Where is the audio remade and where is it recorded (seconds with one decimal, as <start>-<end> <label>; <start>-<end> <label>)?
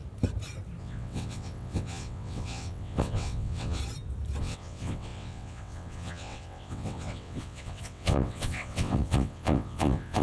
0.0-0.8 recorded; 0.8-3.8 remade; 3.8-4.4 recorded; 4.4-10.2 remade